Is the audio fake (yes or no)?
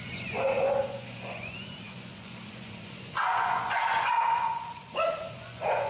yes